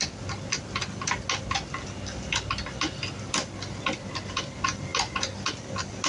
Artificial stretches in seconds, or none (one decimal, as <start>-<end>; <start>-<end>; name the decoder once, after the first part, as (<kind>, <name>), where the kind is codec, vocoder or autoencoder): none